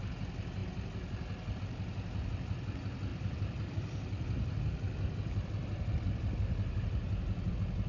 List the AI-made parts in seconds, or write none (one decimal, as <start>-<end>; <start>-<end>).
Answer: none